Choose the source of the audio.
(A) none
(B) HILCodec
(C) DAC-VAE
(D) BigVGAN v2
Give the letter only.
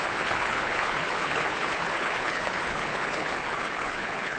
B